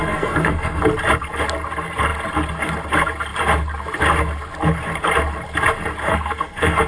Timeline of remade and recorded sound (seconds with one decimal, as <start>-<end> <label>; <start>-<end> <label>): 0.0-0.8 remade; 0.8-6.0 recorded; 6.0-6.9 remade